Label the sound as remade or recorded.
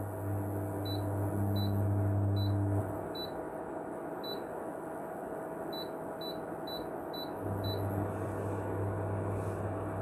recorded